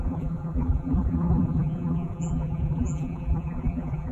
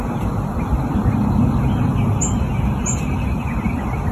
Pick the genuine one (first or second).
second